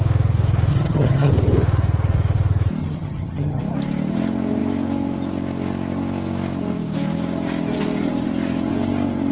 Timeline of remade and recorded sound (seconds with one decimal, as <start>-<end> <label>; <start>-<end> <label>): 0.0-0.7 recorded; 0.7-1.3 remade; 1.3-2.8 recorded; 2.8-3.6 remade; 3.6-9.3 recorded